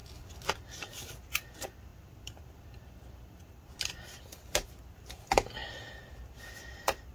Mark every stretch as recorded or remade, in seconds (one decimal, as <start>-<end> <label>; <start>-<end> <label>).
0.0-7.1 remade